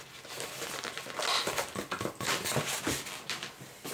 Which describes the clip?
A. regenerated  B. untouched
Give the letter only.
B